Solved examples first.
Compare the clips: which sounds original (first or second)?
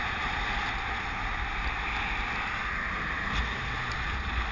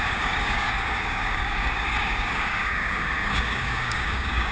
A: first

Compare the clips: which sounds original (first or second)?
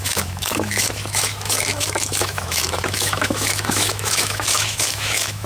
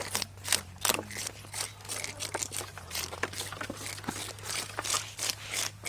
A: second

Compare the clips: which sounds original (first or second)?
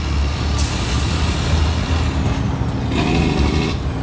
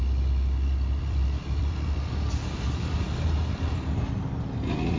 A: first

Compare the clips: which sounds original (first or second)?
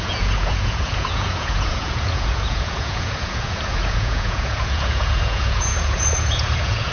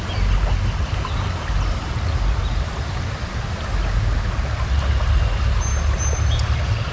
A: second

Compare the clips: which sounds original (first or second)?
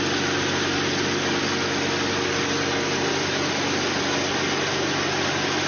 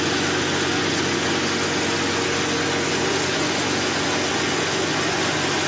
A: first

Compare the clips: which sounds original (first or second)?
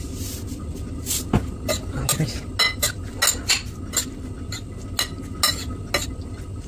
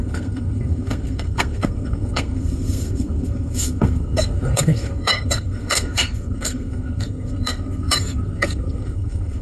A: first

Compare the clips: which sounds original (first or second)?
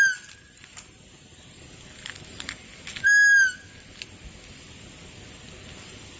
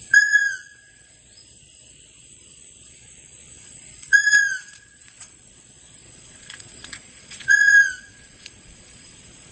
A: first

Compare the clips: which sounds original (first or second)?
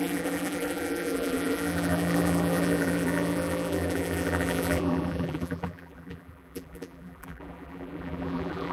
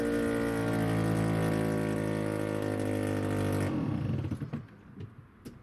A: second